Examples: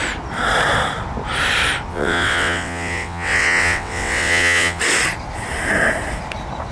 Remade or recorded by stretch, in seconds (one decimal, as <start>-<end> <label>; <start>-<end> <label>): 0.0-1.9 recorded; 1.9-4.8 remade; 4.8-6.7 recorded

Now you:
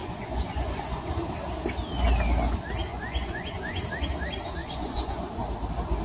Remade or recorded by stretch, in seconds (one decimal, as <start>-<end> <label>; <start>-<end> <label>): 0.0-1.1 remade; 1.1-2.9 recorded; 2.9-3.8 remade; 3.8-4.6 recorded; 4.6-5.3 remade; 5.3-6.0 recorded

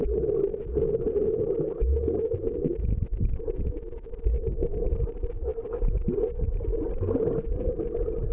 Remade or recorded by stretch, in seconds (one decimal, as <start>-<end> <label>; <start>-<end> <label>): 0.0-8.3 recorded

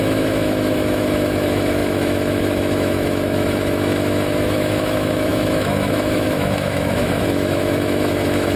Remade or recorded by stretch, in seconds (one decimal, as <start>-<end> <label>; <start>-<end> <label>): 0.0-8.6 remade

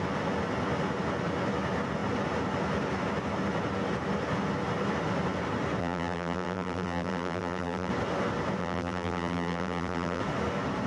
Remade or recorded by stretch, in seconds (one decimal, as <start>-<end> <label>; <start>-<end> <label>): 0.0-5.8 recorded; 5.8-7.9 remade; 7.9-8.6 recorded; 8.6-10.2 remade; 10.2-10.9 recorded